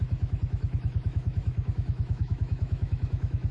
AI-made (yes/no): yes